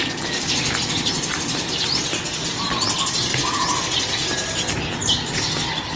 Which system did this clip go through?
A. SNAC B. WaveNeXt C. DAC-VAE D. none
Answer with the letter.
D